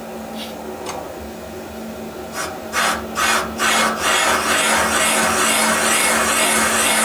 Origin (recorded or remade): recorded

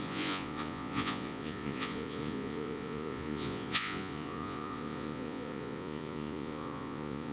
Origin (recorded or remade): remade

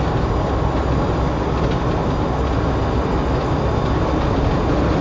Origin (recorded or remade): recorded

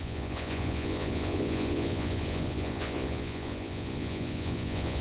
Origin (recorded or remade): remade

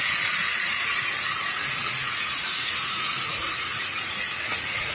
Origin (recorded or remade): remade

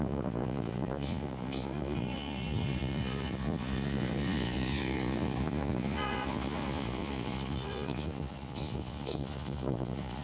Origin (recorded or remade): remade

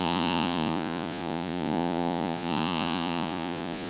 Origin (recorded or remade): remade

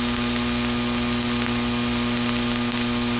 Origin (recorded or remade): recorded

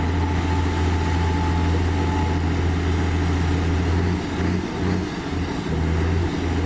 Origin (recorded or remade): recorded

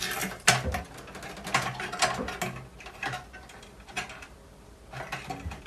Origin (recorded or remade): recorded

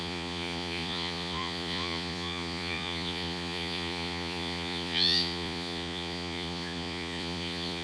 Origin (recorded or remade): remade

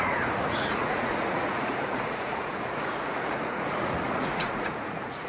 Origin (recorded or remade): remade